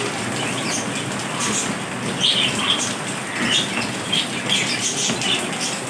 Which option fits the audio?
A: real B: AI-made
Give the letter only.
A